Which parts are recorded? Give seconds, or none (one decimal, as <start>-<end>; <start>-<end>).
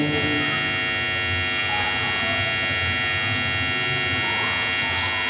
0.0-5.3